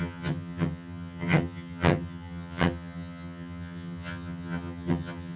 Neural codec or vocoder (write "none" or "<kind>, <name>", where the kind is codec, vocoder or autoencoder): vocoder, HiFi-GAN